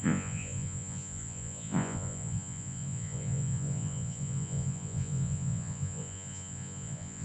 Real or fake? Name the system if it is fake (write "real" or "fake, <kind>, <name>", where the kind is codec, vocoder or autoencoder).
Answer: fake, vocoder, Vocos